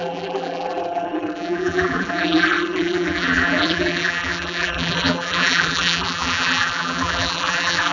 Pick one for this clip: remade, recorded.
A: remade